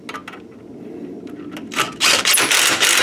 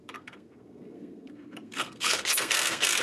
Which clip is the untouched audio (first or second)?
first